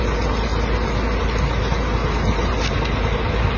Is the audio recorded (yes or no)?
yes